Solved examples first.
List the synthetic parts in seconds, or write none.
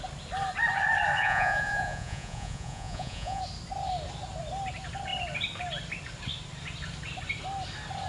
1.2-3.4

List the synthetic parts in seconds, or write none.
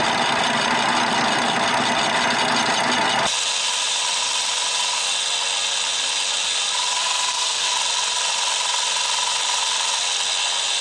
7.0-7.7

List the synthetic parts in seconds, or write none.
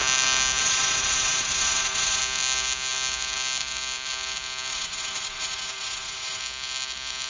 0.6-2.2; 4.7-6.4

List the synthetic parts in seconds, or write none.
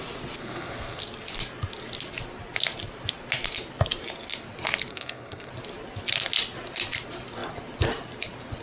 0.4-1.0; 4.9-5.5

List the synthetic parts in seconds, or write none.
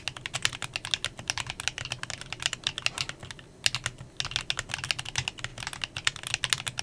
none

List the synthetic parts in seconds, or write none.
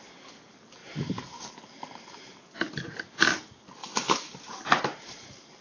3.8-4.3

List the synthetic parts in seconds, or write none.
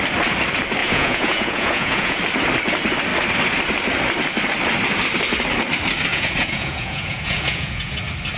0.8-2.2; 6.1-8.0